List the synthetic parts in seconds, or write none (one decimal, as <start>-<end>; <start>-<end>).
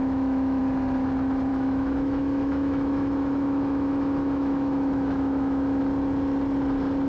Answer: 0.0-0.6; 1.5-5.8